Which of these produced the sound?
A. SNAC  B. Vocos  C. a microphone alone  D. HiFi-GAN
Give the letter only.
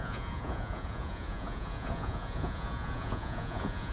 B